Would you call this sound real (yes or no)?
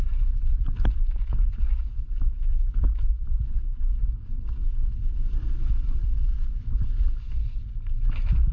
yes